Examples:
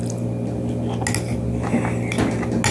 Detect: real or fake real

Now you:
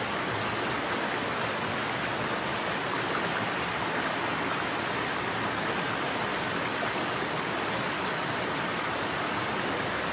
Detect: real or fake real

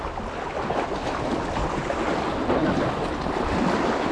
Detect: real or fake real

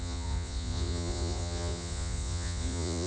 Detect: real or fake fake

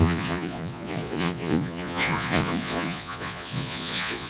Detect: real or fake fake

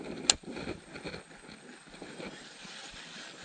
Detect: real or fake real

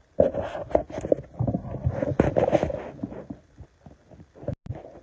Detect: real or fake real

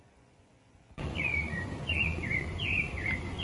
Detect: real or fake fake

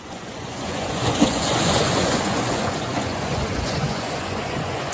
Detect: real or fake fake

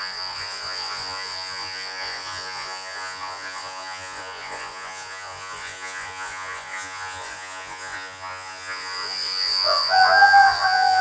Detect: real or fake fake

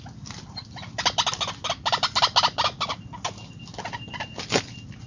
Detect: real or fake real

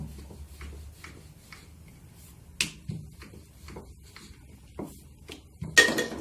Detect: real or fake real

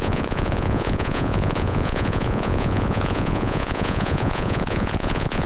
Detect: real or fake fake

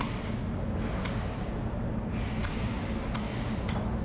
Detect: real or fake real